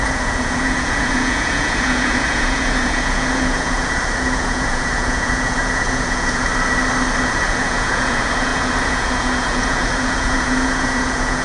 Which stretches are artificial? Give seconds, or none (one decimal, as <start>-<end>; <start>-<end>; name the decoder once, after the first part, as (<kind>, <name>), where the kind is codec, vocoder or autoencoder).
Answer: 0.0-6.5 (vocoder, Vocos); 7.3-11.4